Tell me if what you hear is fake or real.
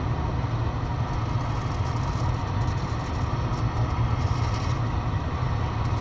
real